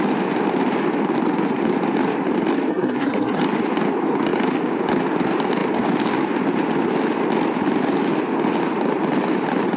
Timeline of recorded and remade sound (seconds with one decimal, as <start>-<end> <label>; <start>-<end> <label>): 0.0-2.7 recorded; 2.7-3.4 remade; 3.4-9.8 recorded